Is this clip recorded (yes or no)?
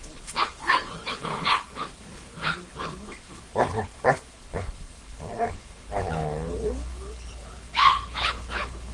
no